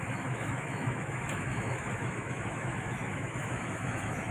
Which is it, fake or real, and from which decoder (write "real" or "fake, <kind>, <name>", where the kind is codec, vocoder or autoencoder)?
fake, autoencoder, DAC-VAE